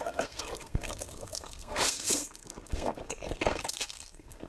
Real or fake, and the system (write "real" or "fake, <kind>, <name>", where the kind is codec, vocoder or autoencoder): fake, codec, SNAC